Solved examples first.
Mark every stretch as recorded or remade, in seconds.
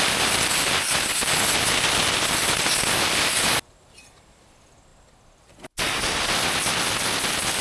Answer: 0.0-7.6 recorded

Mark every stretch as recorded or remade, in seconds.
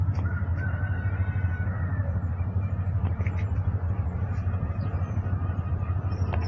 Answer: 0.0-0.5 remade; 0.5-1.1 recorded; 1.1-6.5 remade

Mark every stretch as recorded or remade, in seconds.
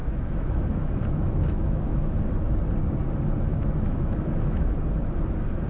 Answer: 0.0-2.2 remade; 2.2-3.5 recorded; 3.5-4.7 remade; 4.7-5.7 recorded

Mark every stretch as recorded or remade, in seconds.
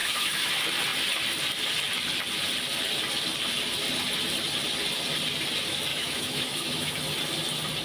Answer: 0.0-0.5 remade; 0.5-5.9 recorded; 5.9-6.9 remade; 6.9-7.8 recorded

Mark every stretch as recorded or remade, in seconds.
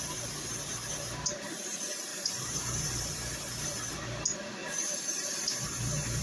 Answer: 0.0-2.1 recorded; 2.1-2.9 remade; 2.9-4.6 recorded; 4.6-5.6 remade; 5.6-6.2 recorded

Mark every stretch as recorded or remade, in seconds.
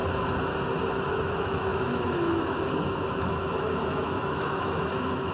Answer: 0.0-0.9 recorded; 0.9-5.3 remade